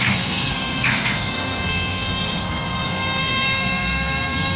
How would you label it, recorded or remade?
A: remade